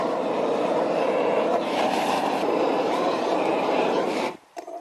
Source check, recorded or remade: remade